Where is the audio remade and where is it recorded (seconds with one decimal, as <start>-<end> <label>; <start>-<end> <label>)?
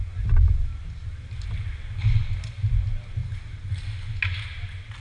0.0-5.0 recorded